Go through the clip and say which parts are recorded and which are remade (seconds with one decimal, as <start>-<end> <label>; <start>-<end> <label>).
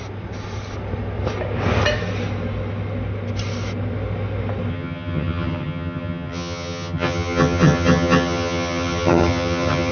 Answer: 0.0-4.7 recorded; 4.7-9.9 remade